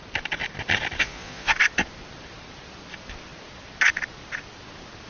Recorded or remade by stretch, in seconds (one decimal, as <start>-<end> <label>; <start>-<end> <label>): 0.0-1.0 recorded; 1.0-1.5 remade; 1.5-5.1 recorded